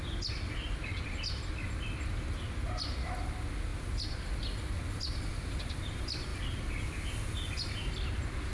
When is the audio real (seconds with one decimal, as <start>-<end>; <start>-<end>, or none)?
0.0-8.5